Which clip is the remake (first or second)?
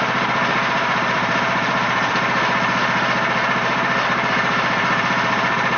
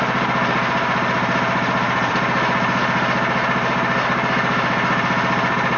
first